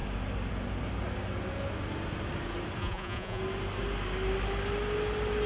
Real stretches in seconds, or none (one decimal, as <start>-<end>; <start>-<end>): 0.0-2.8; 3.4-5.5